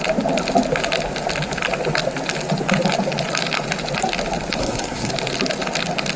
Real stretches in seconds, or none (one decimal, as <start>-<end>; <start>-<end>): 0.0-4.6; 5.1-6.2